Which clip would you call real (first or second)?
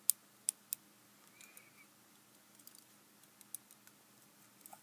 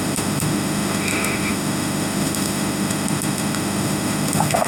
first